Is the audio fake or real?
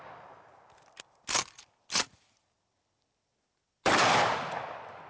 real